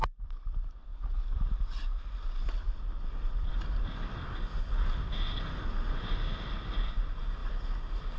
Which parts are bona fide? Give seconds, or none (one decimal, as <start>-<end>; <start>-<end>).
0.0-8.2